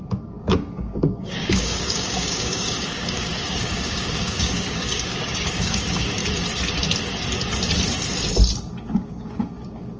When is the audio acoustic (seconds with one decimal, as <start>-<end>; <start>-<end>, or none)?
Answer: 6.2-8.9